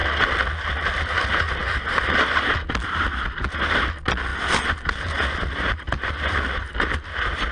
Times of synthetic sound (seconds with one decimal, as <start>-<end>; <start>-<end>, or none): 1.6-3.0